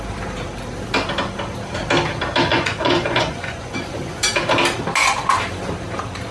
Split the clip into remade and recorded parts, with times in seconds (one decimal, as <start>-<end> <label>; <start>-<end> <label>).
0.0-2.5 recorded; 2.5-4.2 remade; 4.2-6.3 recorded